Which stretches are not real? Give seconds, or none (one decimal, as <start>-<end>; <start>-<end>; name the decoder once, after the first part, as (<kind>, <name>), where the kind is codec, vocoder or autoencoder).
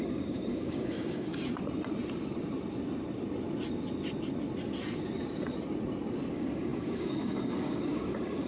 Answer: 0.0-1.3 (codec, DAC); 6.3-8.5